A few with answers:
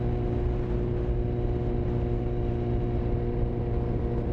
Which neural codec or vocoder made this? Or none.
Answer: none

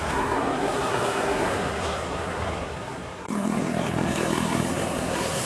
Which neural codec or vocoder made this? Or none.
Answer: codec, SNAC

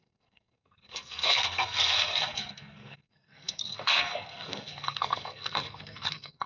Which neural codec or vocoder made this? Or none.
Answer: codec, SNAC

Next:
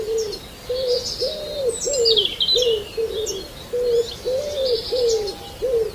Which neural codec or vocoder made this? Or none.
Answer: none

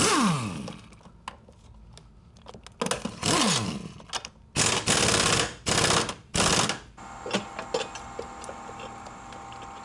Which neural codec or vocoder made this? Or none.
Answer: none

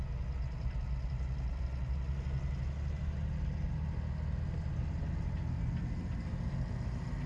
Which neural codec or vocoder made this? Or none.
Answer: none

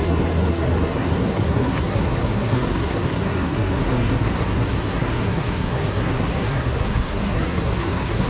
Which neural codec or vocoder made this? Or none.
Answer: codec, SNAC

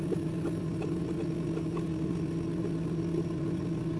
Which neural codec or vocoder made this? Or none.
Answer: none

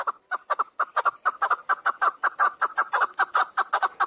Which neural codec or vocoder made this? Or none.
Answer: none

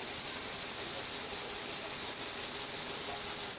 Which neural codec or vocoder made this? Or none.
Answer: none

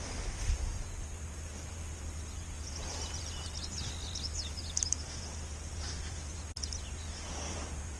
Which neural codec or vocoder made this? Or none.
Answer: none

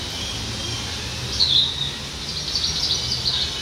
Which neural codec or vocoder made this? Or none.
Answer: none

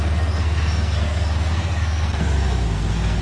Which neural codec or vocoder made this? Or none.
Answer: codec, SNAC